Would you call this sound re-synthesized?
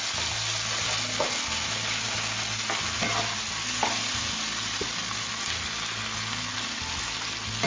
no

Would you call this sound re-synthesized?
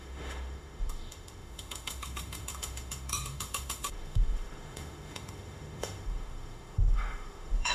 yes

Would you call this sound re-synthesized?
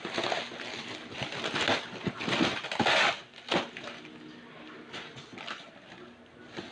no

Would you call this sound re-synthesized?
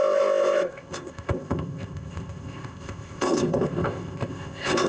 yes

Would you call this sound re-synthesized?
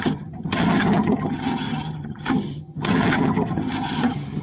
yes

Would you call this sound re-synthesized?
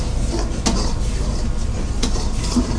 no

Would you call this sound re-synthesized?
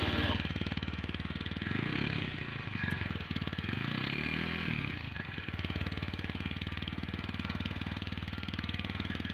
yes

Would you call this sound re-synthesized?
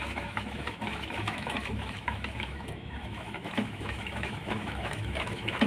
yes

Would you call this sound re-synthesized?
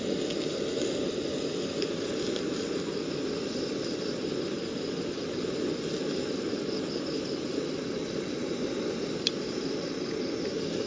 no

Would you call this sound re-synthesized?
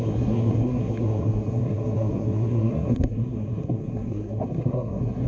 yes